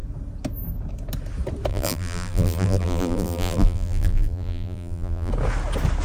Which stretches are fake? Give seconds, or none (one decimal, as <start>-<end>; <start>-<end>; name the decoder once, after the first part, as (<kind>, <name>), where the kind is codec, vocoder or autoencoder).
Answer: 1.7-5.3 (vocoder, BigVGAN v2)